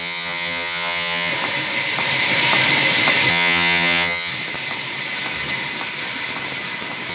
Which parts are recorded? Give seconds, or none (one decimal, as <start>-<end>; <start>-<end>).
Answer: 1.3-3.3; 4.3-7.1